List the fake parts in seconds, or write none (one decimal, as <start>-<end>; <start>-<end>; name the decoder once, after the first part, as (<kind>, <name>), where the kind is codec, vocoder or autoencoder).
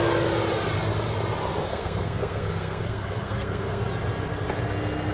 1.7-3.8 (codec, SNAC)